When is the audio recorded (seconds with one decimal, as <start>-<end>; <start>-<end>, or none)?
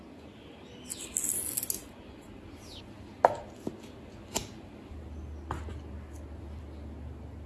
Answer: 0.0-7.5